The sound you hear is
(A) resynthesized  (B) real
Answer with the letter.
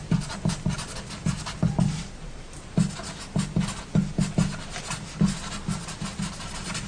B